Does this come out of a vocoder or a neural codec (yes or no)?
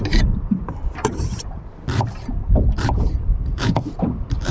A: yes